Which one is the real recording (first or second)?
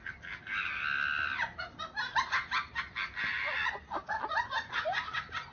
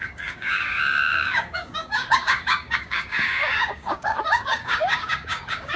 first